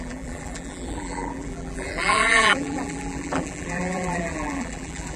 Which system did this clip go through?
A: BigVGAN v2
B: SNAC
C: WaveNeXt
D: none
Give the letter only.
A